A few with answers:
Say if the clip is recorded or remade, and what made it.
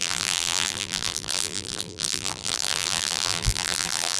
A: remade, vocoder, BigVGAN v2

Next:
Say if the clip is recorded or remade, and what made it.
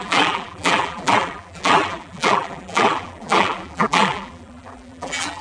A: remade, vocoder, BigVGAN v2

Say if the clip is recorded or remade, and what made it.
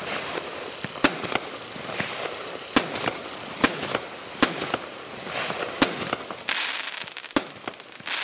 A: recorded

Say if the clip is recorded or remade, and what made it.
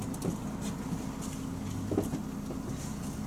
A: recorded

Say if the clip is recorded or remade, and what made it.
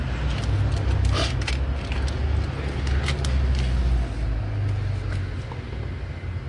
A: recorded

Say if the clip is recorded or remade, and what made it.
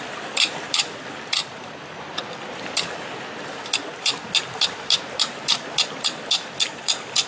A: remade, vocoder, BigVGAN v2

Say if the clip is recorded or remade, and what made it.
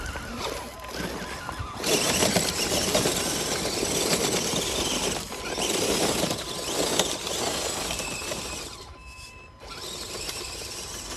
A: remade, vocoder, BigVGAN v2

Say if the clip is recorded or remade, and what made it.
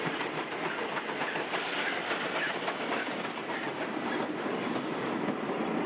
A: recorded